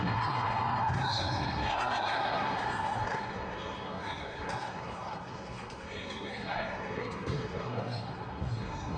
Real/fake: fake